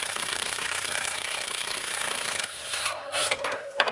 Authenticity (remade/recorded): remade